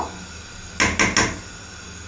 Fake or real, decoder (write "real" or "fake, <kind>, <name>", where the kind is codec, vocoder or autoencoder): real